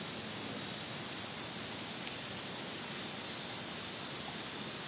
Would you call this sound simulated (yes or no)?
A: no